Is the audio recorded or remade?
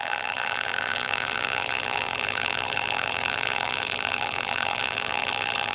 remade